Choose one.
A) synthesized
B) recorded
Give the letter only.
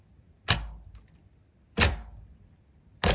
B